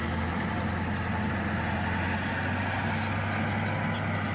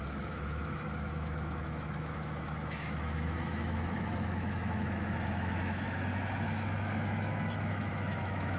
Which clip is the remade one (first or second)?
second